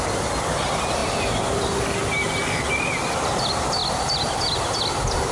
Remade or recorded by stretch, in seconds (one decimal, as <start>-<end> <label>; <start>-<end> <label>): 0.0-5.3 recorded